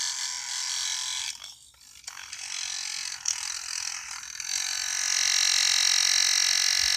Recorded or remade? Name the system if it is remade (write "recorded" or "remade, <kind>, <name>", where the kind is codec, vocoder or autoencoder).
recorded